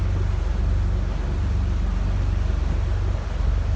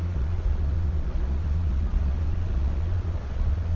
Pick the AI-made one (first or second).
second